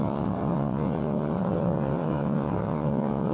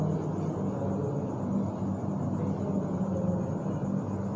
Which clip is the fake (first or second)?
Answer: first